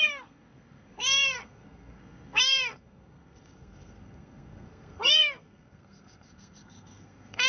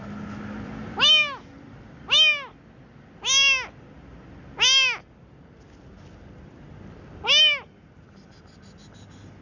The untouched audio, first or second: second